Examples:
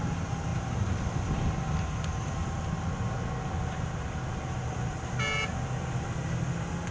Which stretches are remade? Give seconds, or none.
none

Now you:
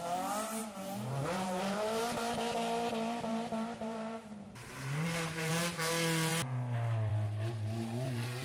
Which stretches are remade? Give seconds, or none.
0.6-5.5 (vocoder, BigVGAN v2)

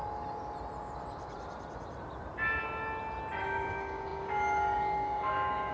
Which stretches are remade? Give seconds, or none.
3.4-5.7 (codec, DAC)